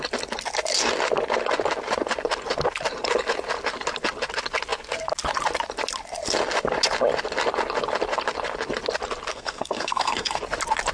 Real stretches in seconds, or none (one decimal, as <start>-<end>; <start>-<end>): 0.0-9.3; 10.4-10.9